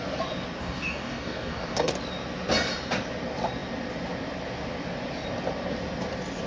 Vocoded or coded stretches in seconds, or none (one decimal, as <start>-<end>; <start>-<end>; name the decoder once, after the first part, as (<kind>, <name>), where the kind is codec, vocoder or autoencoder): 0.6-1.9 (codec, DAC)